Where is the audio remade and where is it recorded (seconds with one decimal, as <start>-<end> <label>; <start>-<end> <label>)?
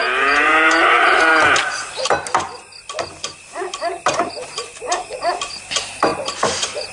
0.0-1.3 remade; 1.3-4.9 recorded; 4.9-6.9 remade